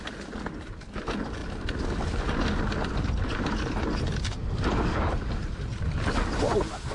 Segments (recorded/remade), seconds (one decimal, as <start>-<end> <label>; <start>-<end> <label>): 0.0-4.4 recorded; 4.4-5.7 remade; 5.7-6.9 recorded